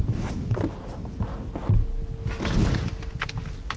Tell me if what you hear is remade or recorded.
recorded